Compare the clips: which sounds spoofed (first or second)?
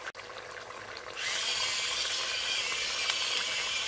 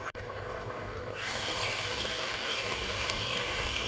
second